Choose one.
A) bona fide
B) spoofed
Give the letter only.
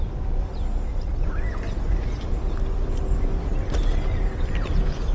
A